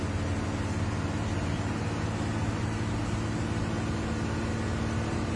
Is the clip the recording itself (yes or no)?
yes